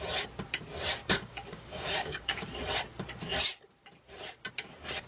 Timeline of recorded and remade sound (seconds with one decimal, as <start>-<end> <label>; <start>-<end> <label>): 0.0-1.0 recorded; 1.0-2.4 remade; 2.4-5.1 recorded